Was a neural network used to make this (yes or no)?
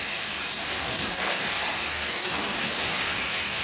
yes